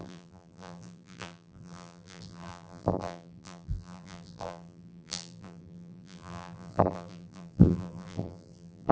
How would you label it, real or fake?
fake